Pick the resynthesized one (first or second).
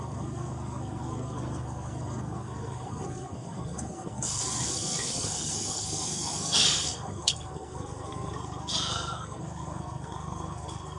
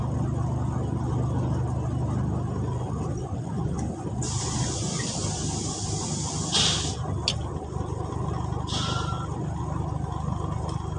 first